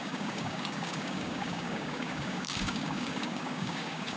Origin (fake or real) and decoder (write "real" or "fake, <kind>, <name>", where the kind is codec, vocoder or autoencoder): fake, codec, DAC